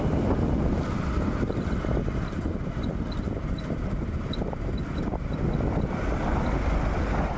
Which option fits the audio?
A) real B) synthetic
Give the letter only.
A